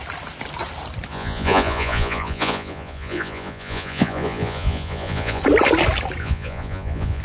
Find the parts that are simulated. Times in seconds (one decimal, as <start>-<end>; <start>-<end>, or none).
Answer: 1.1-5.4; 6.2-7.2